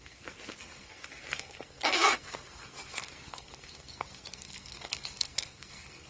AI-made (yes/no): yes